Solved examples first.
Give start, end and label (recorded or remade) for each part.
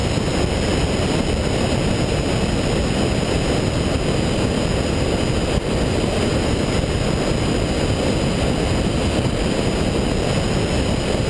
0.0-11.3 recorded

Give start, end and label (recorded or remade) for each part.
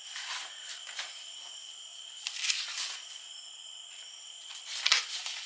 0.0-0.4 recorded; 0.4-1.1 remade; 1.1-1.9 recorded; 1.9-2.6 remade; 2.6-4.5 recorded; 4.5-5.0 remade; 5.0-5.5 recorded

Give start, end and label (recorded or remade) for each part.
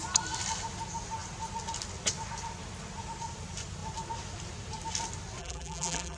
0.0-5.4 recorded; 5.4-6.2 remade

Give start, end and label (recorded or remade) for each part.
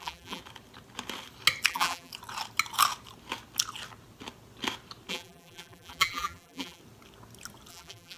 0.0-0.4 remade; 0.4-1.7 recorded; 1.7-2.1 remade; 2.1-5.1 recorded; 5.1-6.8 remade; 6.8-7.7 recorded; 7.7-8.2 remade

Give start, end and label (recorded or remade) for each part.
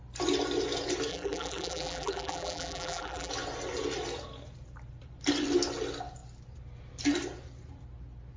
0.0-1.1 recorded; 1.1-3.3 remade; 3.3-8.4 recorded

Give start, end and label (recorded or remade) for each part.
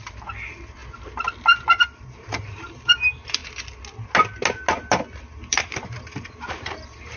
0.0-0.8 remade; 0.8-1.8 recorded; 1.8-3.4 remade; 3.4-5.5 recorded; 5.5-7.2 remade